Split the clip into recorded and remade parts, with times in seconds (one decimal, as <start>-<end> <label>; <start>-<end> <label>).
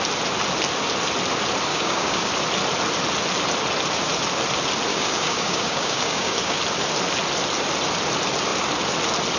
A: 0.0-1.7 recorded; 1.7-2.3 remade; 2.3-4.9 recorded; 4.9-6.6 remade; 6.6-9.4 recorded